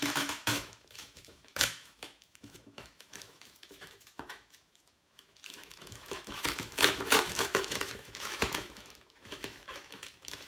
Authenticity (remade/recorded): remade